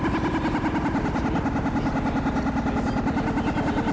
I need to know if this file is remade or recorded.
recorded